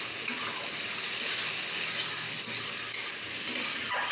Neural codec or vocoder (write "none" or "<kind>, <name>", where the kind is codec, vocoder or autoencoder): none